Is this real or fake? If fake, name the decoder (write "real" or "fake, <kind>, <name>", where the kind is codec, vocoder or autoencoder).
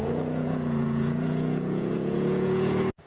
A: fake, vocoder, Vocos